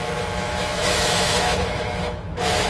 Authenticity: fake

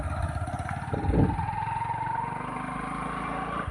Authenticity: real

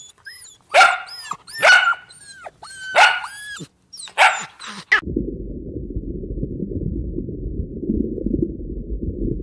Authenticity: real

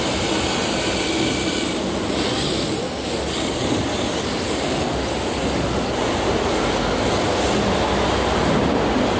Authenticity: real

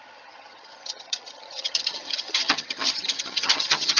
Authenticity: fake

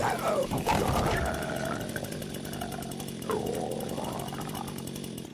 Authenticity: real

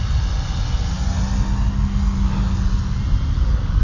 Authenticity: real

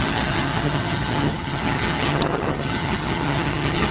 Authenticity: fake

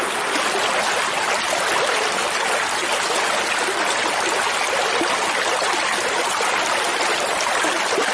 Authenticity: real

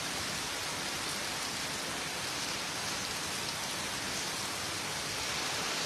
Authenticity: real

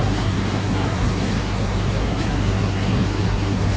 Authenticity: fake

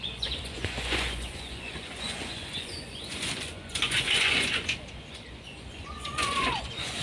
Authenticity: fake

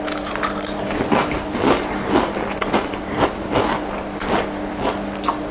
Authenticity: real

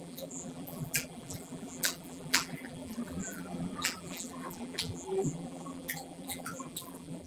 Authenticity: fake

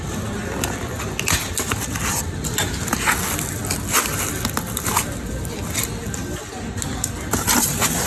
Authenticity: real